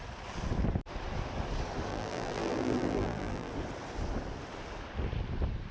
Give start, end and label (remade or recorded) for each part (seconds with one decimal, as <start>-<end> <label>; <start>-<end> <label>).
0.0-1.9 recorded; 1.9-3.5 remade; 3.5-5.7 recorded